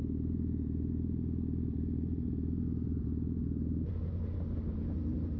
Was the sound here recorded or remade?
recorded